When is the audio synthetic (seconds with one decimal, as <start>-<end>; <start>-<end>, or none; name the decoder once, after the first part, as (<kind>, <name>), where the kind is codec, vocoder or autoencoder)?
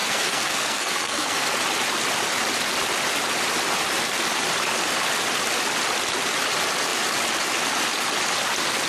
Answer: 0.0-1.5 (codec, SNAC)